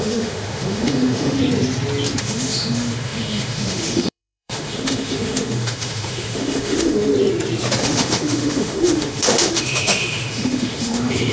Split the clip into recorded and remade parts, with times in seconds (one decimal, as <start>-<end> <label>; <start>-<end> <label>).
0.0-1.4 remade; 1.4-2.2 recorded; 2.2-7.1 remade; 7.1-7.8 recorded; 7.8-11.3 remade